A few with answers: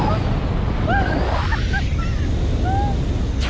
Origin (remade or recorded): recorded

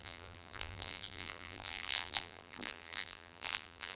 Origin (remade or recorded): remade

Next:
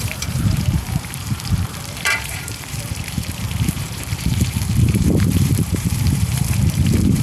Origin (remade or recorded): remade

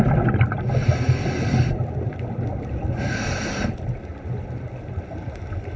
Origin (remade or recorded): recorded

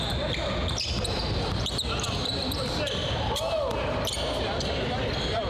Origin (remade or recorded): recorded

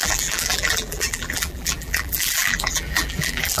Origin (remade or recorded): remade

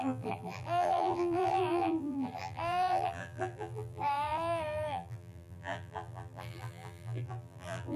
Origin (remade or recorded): remade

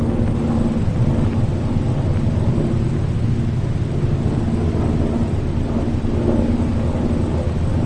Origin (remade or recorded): recorded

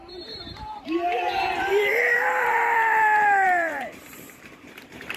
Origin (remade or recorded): remade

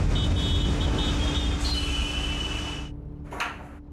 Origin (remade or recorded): recorded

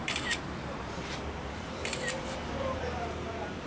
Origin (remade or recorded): remade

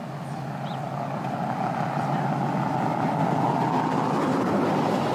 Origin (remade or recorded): recorded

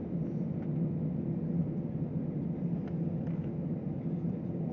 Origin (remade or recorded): recorded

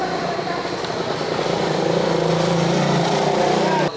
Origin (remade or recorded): recorded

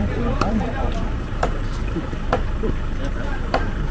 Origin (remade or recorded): remade